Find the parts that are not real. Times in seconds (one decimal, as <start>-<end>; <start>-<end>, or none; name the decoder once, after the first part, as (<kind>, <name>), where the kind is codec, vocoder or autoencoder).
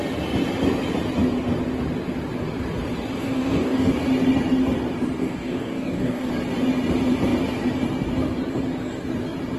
3.2-3.9 (codec, DAC); 5.2-6.3